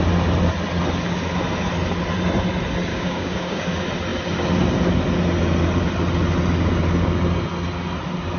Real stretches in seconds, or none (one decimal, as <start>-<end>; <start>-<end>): 0.0-2.9; 3.6-8.4